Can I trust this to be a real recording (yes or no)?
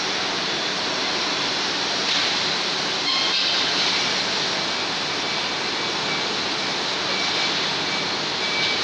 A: yes